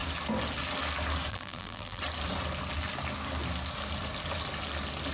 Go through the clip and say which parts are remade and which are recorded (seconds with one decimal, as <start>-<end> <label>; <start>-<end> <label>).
0.0-1.3 recorded; 1.3-2.0 remade; 2.0-5.1 recorded